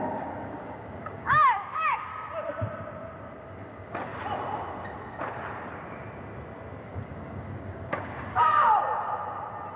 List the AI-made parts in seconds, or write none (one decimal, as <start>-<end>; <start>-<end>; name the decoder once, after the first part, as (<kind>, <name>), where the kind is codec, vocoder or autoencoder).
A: 0.0-2.1 (codec, DAC); 3.4-4.1; 6.8-8.6